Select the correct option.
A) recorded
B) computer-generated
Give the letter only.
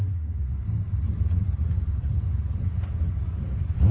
A